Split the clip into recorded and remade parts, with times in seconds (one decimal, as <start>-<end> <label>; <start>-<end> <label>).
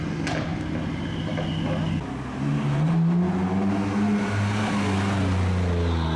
0.0-6.2 recorded